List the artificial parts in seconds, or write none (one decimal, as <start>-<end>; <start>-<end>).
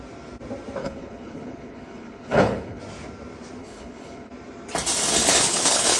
0.8-2.8; 3.6-4.3; 5.2-6.0